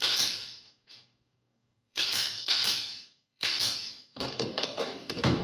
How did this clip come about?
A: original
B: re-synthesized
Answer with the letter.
B